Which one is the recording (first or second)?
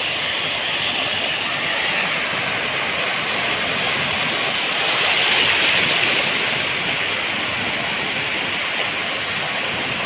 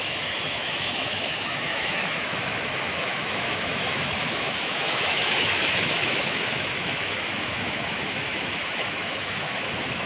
first